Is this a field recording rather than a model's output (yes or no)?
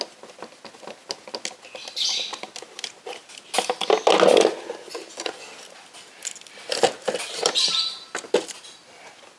yes